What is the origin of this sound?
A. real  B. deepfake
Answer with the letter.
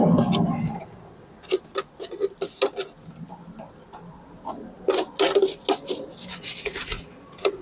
A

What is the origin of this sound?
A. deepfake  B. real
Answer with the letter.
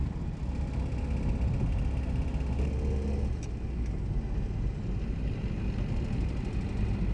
B